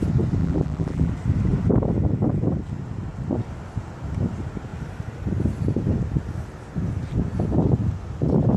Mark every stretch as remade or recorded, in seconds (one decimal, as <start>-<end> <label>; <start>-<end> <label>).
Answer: 0.0-0.4 recorded; 0.4-1.1 remade; 1.1-8.6 recorded